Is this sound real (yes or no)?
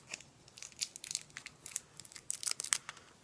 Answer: yes